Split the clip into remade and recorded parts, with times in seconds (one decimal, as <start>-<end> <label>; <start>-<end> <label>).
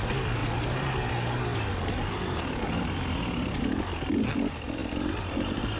0.0-5.8 recorded